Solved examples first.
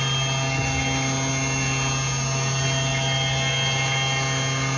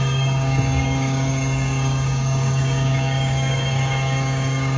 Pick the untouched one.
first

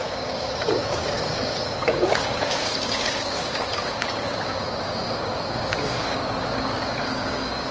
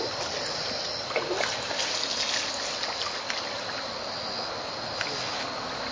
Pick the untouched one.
second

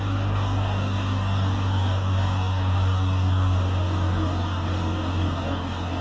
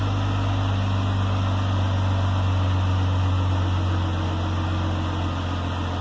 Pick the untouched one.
second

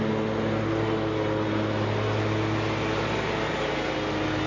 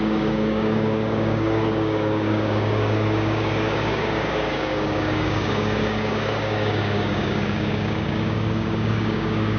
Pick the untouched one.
first